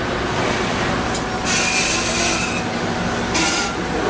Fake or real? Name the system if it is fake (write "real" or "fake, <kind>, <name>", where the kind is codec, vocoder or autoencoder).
real